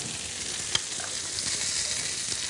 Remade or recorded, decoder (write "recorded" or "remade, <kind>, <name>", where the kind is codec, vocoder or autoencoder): recorded